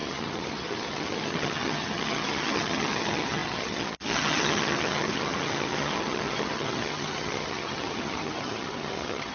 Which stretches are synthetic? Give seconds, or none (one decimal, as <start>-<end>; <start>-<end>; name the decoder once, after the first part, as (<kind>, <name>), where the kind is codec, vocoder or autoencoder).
0.0-9.3 (vocoder, HiFi-GAN)